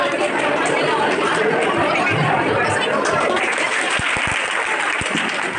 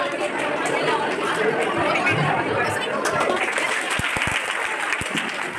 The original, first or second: second